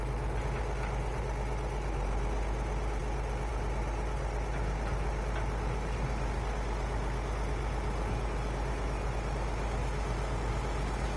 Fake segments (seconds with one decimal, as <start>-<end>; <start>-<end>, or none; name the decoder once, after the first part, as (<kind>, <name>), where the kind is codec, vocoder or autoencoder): none